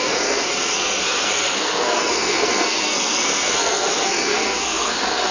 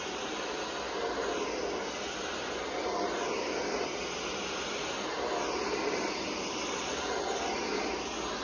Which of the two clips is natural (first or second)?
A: second